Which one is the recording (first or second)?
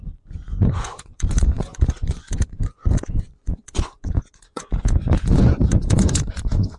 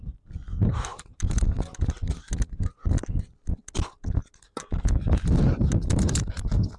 second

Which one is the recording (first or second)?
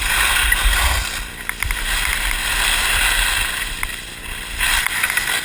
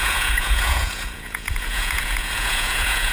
first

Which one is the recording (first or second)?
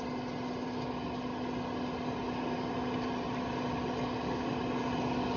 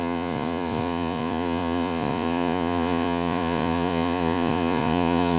first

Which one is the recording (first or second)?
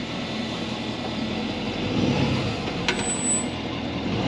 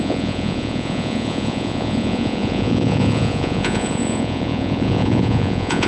first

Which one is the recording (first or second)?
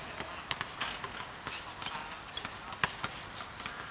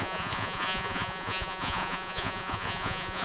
first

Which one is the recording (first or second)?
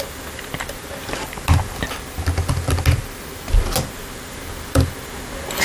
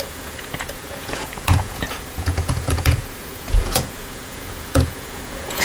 first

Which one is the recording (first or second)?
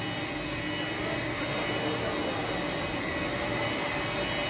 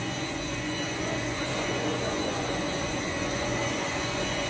first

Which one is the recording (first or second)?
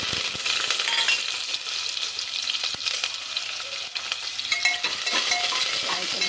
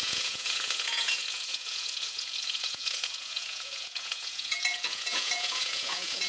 first